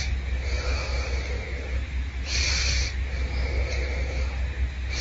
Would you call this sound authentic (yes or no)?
yes